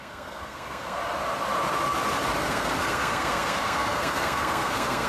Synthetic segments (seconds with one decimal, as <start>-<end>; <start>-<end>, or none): 0.0-1.0; 2.4-5.1